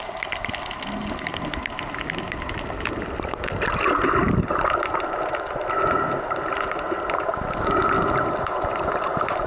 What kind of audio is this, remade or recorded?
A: recorded